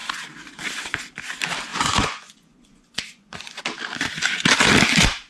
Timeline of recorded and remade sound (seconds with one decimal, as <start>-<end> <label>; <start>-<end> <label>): 0.0-1.7 recorded; 1.7-3.6 remade; 3.6-5.3 recorded